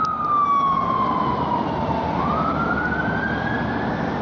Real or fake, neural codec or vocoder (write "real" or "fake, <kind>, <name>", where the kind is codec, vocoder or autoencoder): real